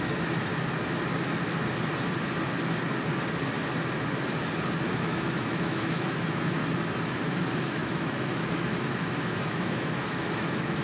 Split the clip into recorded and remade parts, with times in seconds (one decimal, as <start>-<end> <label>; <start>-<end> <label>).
0.0-0.5 remade; 0.5-4.9 recorded; 4.9-6.6 remade; 6.6-7.2 recorded; 7.2-10.8 remade

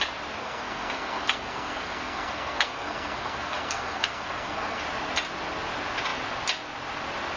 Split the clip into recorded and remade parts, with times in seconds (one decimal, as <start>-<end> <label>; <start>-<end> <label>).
0.0-0.4 recorded; 0.4-4.8 remade; 4.8-7.4 recorded